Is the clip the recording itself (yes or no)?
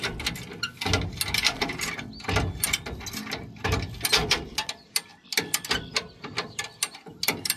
yes